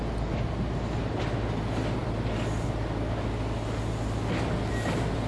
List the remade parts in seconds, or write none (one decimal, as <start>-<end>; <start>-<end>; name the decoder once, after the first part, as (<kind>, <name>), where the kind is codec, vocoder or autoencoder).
none